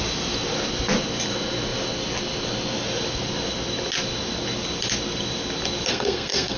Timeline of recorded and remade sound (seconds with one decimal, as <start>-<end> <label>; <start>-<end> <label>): 0.0-5.9 recorded; 5.9-6.6 remade